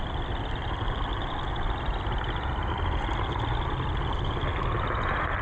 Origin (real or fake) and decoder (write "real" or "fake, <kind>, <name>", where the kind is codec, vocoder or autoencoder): real